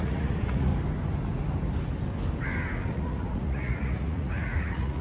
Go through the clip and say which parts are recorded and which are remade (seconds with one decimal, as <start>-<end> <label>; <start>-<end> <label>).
0.0-0.7 remade; 0.7-2.9 recorded; 2.9-5.0 remade